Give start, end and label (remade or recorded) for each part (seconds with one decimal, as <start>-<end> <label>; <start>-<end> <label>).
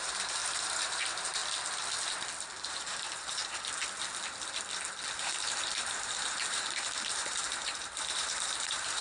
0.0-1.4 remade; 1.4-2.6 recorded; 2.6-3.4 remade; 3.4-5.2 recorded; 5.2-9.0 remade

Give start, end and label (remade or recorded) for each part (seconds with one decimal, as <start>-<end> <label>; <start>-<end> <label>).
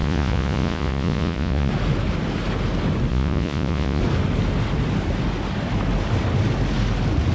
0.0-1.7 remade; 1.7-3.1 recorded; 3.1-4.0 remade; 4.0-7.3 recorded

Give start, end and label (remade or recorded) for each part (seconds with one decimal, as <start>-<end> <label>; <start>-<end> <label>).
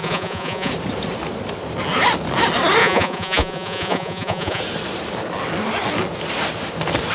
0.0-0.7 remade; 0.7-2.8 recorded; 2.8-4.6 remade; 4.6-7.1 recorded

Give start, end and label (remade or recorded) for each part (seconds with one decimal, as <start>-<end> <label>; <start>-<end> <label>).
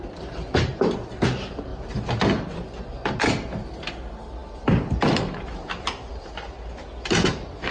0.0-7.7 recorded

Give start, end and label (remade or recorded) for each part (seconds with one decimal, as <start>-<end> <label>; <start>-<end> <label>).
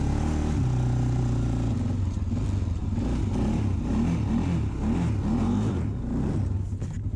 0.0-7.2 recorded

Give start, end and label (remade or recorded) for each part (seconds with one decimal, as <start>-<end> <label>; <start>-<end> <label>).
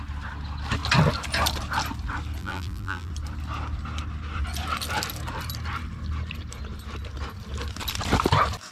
0.0-2.4 recorded; 2.4-3.1 remade; 3.1-8.7 recorded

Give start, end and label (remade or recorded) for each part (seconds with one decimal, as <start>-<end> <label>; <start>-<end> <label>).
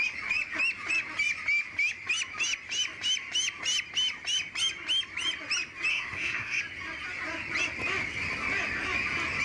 0.0-5.9 recorded; 5.9-6.6 remade; 6.6-9.4 recorded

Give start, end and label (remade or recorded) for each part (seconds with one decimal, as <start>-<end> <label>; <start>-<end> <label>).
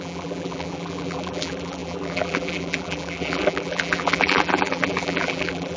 0.0-5.8 remade